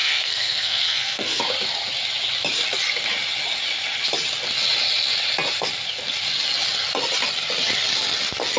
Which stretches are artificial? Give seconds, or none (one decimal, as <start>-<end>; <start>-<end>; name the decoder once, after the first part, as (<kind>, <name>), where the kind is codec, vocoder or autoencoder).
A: 0.0-1.4 (codec, SNAC)